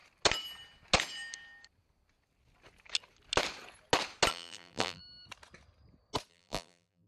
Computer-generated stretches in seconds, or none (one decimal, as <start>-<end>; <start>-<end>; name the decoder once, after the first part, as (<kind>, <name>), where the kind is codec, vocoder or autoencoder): 4.3-5.0 (vocoder, BigVGAN v2); 6.3-7.1